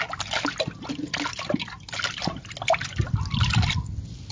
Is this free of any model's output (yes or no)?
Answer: yes